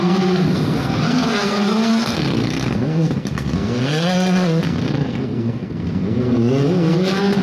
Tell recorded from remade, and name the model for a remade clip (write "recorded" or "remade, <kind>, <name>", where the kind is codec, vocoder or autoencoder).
remade, codec, SNAC